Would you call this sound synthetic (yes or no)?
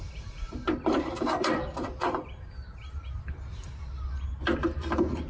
no